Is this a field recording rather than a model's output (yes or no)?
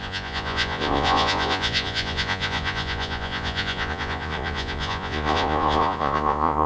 no